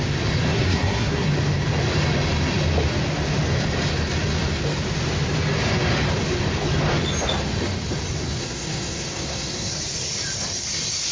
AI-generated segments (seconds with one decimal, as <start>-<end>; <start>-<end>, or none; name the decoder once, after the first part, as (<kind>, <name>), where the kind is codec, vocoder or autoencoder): 0.5-1.3 (codec, SNAC); 8.4-9.7